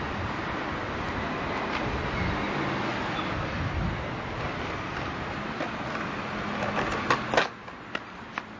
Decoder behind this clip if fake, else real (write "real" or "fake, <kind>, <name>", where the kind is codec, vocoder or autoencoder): real